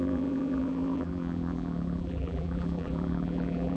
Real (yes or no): no